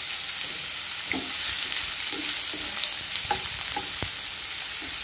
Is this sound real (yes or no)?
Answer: yes